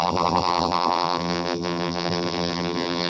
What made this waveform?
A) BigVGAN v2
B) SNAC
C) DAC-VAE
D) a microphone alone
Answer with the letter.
A